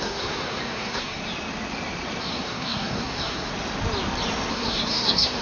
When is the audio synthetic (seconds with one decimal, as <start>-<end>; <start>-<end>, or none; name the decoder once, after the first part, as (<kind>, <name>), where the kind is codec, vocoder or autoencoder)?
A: 0.0-1.2 (codec, SNAC); 2.2-3.5; 4.5-5.4